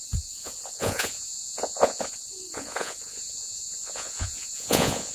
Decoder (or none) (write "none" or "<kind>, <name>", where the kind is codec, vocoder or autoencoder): vocoder, Vocos